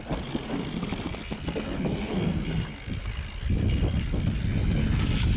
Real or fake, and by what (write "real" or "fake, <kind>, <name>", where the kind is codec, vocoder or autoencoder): real